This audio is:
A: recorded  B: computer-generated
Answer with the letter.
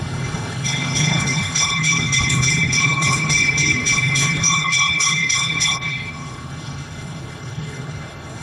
B